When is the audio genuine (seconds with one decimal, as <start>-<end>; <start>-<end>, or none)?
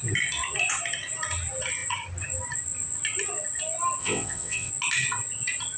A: 0.0-4.0; 4.7-5.8